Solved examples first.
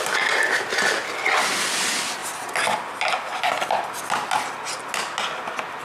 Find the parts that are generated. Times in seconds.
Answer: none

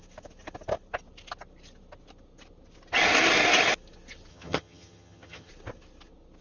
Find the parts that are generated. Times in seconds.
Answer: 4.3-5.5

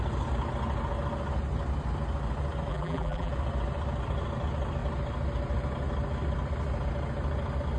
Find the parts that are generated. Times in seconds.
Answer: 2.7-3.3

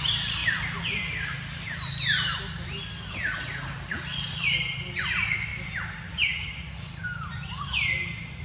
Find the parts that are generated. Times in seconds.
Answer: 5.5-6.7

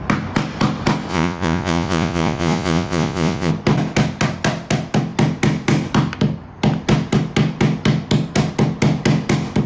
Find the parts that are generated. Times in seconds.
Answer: 1.1-3.5

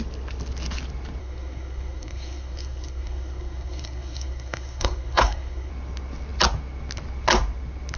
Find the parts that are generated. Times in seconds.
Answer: 1.2-5.7

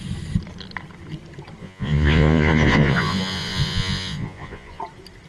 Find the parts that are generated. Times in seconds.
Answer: 1.6-4.8

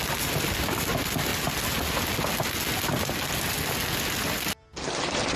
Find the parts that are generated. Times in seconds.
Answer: none